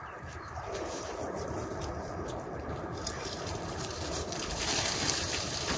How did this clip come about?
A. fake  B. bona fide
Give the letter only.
A